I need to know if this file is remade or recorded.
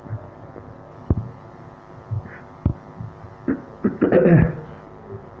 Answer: remade